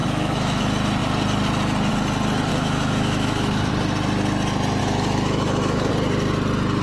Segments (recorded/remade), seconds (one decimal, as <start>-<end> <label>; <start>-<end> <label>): 0.0-0.6 remade; 0.6-2.5 recorded; 2.5-3.7 remade; 3.7-4.8 recorded; 4.8-5.9 remade; 5.9-6.8 recorded